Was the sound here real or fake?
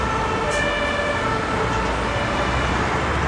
real